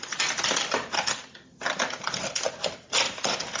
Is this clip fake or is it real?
real